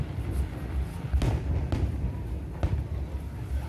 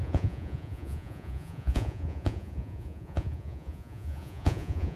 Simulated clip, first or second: second